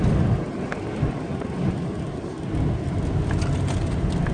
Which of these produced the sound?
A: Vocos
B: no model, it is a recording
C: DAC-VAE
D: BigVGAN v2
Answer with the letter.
B